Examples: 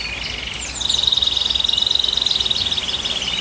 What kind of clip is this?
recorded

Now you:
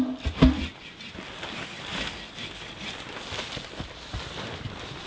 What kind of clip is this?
recorded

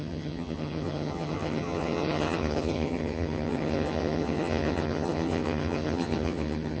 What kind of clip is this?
remade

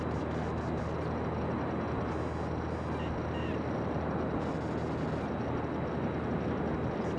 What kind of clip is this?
recorded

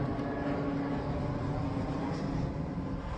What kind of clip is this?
recorded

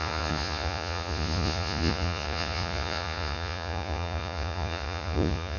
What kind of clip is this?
remade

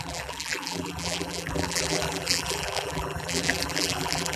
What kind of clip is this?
remade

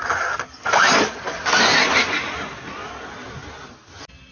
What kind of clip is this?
recorded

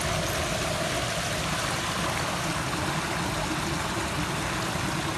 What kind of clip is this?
recorded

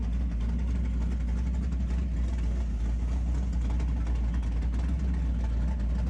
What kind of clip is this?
recorded